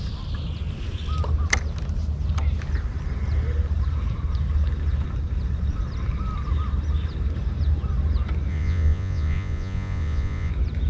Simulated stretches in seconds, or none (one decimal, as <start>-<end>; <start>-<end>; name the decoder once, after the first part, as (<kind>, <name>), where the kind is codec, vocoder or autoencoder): 8.5-10.5 (vocoder, Vocos)